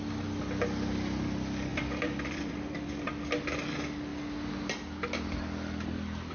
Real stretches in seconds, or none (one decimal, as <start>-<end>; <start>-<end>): 0.0-1.7; 3.1-6.3